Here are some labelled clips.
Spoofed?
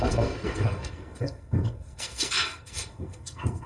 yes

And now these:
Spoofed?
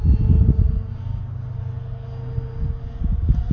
no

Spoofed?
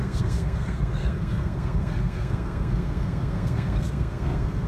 yes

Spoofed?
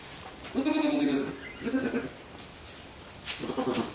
no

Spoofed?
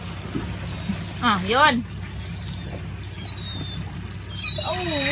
no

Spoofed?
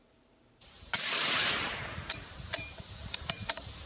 yes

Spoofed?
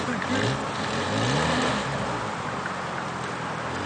no